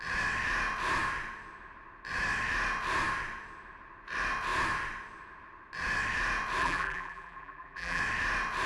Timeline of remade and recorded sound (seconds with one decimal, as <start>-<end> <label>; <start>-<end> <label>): 0.0-6.6 recorded; 6.6-8.0 remade; 8.0-8.7 recorded